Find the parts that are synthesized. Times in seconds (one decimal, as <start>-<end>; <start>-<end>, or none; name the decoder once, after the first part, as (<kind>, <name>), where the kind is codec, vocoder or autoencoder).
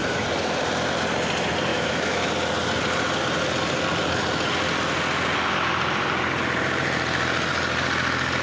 1.7-2.3 (autoencoder, DAC-VAE)